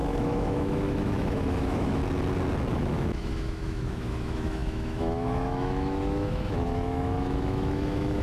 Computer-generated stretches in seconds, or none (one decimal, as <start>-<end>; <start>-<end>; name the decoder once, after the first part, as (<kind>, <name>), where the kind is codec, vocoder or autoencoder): 0.0-2.0 (autoencoder, DAC-VAE); 2.7-8.2